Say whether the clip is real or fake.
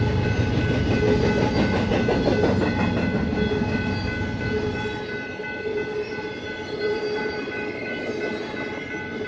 real